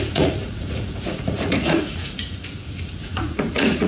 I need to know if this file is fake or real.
fake